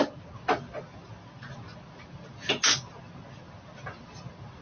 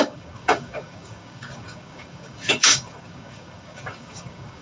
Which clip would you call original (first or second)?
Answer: first